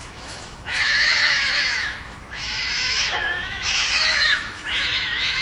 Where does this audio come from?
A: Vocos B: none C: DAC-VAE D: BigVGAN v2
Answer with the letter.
C